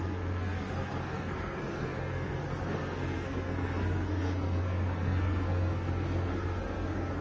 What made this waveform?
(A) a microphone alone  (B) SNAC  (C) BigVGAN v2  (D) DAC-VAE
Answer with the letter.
B